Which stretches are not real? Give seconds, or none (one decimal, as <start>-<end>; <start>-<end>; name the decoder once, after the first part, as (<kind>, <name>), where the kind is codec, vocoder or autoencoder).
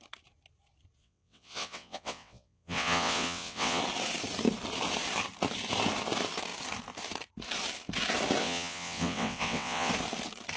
1.0-3.8 (vocoder, WaveNeXt); 8.4-9.9